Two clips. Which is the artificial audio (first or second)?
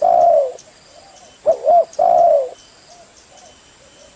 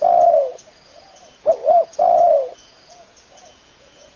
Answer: second